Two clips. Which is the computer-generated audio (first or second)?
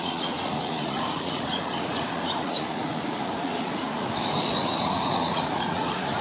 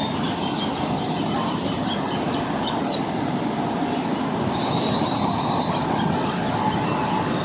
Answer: first